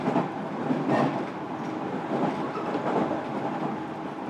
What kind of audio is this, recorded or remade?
recorded